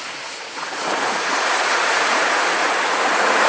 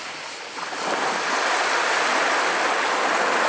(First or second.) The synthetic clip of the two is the first